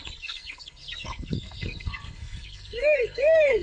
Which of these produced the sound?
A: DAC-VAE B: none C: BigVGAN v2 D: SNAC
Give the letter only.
D